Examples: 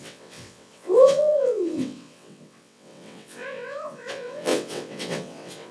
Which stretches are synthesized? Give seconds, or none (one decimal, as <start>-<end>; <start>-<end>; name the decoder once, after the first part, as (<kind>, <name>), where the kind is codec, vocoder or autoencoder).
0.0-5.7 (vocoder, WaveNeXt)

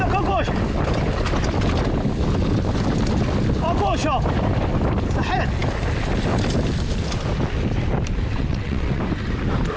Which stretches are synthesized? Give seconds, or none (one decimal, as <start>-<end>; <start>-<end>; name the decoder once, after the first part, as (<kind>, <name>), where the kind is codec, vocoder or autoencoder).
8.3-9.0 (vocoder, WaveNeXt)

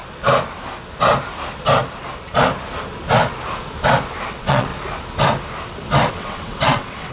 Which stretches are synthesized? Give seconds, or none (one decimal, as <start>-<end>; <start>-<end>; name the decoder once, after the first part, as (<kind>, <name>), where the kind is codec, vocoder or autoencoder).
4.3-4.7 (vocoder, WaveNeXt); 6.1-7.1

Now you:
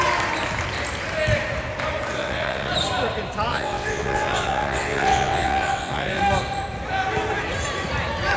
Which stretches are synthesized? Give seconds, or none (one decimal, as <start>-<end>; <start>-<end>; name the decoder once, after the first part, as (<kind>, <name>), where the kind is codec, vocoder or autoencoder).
2.2-2.7 (vocoder, WaveNeXt); 3.5-6.2

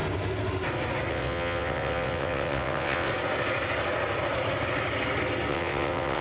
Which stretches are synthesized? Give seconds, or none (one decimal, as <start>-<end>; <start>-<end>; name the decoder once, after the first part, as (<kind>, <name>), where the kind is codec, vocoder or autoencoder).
1.1-3.1 (vocoder, WaveNeXt); 5.5-6.2